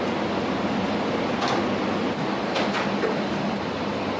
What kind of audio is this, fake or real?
real